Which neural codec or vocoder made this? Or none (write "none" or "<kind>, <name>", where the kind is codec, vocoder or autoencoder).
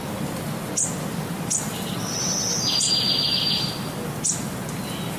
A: none